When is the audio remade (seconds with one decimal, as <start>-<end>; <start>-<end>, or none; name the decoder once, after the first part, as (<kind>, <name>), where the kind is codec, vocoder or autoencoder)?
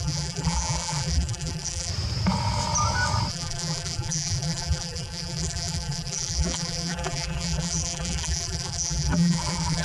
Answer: 0.0-1.9 (vocoder, BigVGAN v2); 3.3-9.8